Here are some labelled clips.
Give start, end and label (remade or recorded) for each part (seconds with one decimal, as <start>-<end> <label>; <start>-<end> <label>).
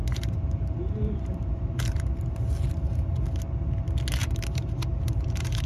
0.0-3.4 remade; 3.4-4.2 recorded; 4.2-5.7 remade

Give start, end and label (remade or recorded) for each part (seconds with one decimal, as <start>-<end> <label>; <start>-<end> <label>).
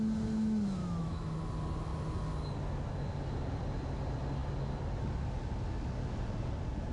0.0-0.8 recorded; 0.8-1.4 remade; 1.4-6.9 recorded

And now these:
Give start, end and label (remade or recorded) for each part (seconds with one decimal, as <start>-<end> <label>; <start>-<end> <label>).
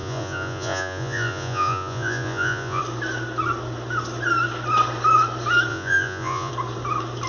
0.0-2.8 remade; 2.8-5.7 recorded; 5.7-6.5 remade; 6.5-7.3 recorded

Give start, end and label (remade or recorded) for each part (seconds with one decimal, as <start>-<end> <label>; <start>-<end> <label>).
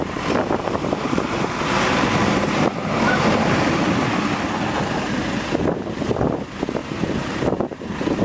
0.0-3.8 remade; 3.8-6.8 recorded; 6.8-8.2 remade